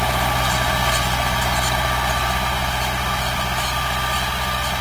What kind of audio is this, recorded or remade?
recorded